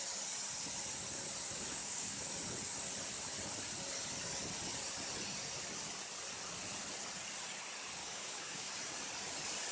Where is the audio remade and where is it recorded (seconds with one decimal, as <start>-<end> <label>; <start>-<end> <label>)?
0.0-1.8 recorded; 1.8-2.3 remade; 2.3-8.0 recorded; 8.0-8.7 remade; 8.7-9.7 recorded